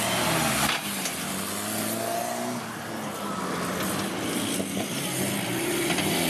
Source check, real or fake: real